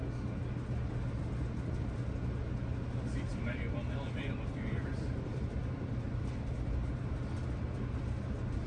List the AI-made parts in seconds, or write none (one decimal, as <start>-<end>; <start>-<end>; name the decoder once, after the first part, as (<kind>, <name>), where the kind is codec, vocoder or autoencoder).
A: 3.3-7.8 (vocoder, BigVGAN v2)